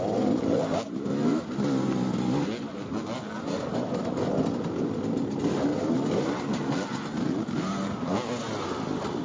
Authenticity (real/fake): real